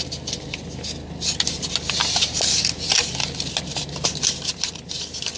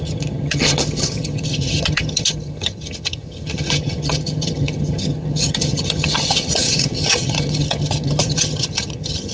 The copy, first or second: second